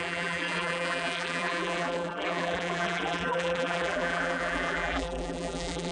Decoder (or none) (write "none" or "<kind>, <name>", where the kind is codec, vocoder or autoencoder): vocoder, BigVGAN v2